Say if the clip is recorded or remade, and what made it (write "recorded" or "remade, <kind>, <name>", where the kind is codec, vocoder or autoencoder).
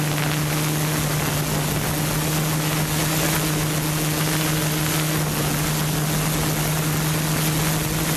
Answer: recorded